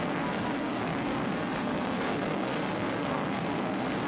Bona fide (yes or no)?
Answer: no